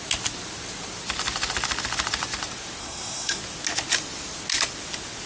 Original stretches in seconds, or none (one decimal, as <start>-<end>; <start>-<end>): 0.0-2.8; 3.4-5.3